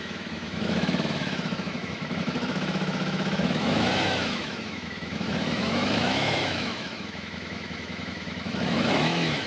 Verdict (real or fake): fake